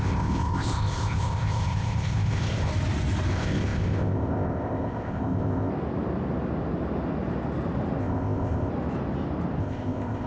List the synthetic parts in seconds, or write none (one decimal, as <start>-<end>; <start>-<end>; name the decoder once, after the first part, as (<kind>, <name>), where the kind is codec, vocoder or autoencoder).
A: 0.0-2.7 (codec, ZipCodec); 3.3-5.7; 8.0-8.7; 9.6-10.3